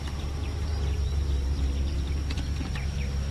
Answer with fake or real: fake